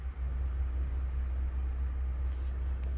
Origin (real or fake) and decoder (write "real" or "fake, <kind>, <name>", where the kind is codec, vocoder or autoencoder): real